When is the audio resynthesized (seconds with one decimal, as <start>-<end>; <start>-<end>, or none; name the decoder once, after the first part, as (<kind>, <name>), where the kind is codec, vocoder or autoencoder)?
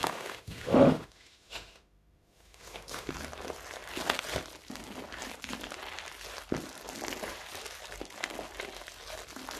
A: 0.0-3.1 (autoencoder, DAC-VAE)